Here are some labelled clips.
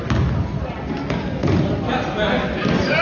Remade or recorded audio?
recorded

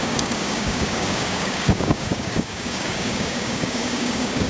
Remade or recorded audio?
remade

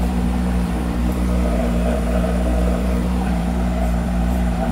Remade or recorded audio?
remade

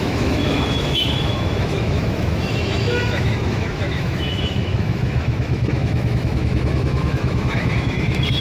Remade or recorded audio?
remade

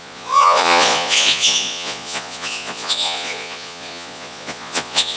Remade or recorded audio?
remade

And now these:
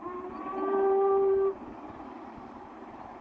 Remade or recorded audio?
remade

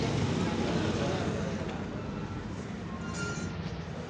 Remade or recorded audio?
recorded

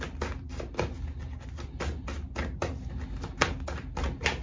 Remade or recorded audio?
recorded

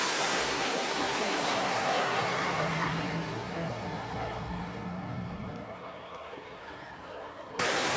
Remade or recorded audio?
remade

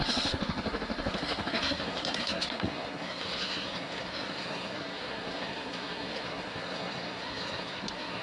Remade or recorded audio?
remade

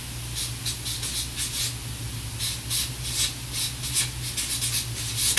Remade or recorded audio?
recorded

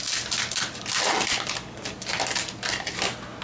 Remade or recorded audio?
recorded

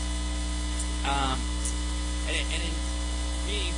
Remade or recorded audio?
recorded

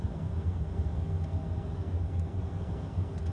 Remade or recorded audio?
remade